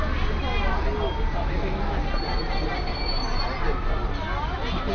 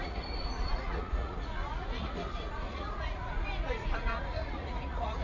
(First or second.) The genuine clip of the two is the first